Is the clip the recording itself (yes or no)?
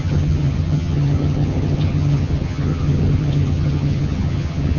no